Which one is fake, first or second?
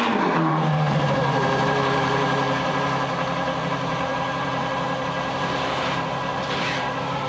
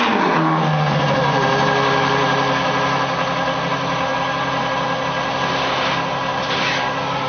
first